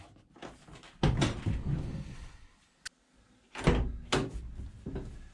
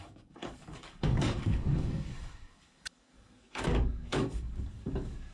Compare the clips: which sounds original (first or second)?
first